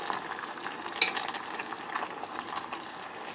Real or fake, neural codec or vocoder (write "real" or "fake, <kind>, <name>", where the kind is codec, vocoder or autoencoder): real